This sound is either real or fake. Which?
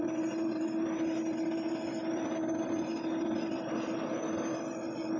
real